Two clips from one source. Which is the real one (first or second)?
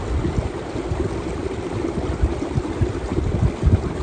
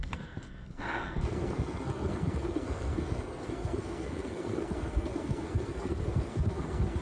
first